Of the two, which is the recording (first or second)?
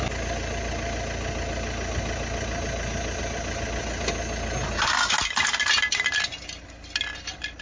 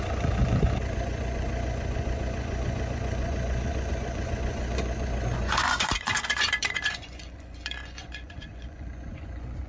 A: first